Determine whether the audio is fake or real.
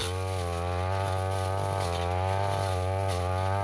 real